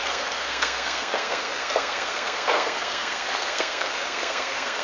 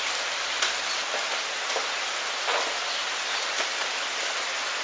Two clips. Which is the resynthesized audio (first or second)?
first